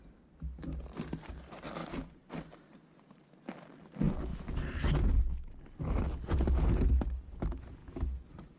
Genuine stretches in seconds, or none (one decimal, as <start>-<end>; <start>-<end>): 0.0-1.8; 2.7-8.6